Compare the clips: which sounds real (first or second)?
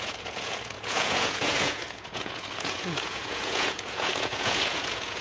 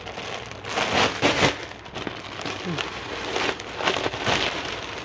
second